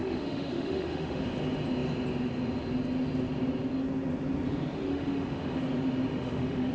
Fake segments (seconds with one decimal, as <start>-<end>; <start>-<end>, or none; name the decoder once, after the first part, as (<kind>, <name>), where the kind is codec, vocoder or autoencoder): 0.0-1.2 (autoencoder, DAC-VAE); 4.9-5.6; 6.1-6.7